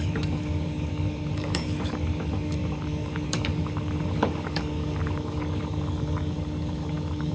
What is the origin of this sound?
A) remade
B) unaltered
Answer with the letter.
A